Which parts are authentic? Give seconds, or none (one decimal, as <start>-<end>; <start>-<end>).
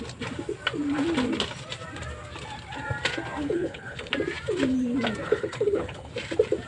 0.0-3.4; 4.1-5.2; 6.1-6.7